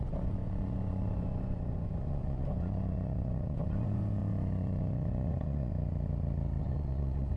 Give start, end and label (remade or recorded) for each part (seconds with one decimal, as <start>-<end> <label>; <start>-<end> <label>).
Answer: 0.0-5.7 remade; 5.7-6.6 recorded; 6.6-7.4 remade